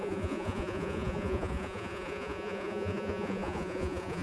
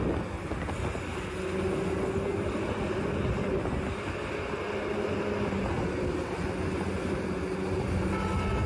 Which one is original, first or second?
second